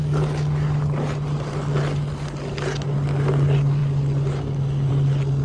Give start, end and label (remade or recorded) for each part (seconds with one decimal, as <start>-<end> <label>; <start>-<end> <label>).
0.0-5.4 recorded

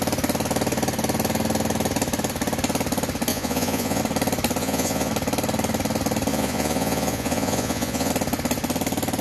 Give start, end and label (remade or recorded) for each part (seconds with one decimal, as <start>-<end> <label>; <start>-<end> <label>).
0.0-3.3 recorded; 3.3-4.0 remade; 4.0-4.6 recorded; 4.6-5.1 remade; 5.1-6.3 recorded; 6.3-8.1 remade; 8.1-9.2 recorded

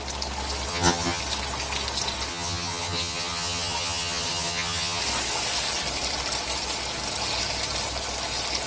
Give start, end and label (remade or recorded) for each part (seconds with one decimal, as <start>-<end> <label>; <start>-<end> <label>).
0.0-0.7 recorded; 0.7-1.2 remade; 1.2-2.3 recorded; 2.3-5.0 remade; 5.0-8.7 recorded

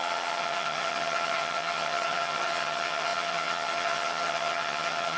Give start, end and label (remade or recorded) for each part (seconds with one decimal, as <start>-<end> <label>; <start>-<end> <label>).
0.0-5.2 remade

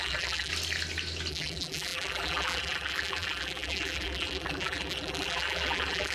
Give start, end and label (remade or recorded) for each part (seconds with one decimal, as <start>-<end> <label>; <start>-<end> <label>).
0.0-0.5 remade; 0.5-1.3 recorded; 1.3-6.1 remade

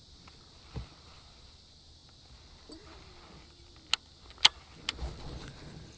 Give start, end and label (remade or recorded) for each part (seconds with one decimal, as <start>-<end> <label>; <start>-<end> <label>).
0.0-6.0 recorded

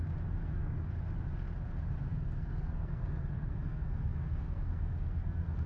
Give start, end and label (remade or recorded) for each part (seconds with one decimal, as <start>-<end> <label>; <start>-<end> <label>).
0.0-0.4 recorded; 0.4-0.9 remade; 0.9-2.1 recorded; 2.1-5.7 remade

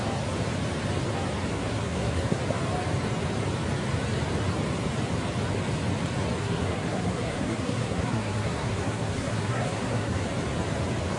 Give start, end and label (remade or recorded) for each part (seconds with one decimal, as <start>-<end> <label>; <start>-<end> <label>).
0.0-1.5 recorded; 1.5-2.4 remade; 2.4-6.4 recorded; 6.4-10.2 remade; 10.2-11.2 recorded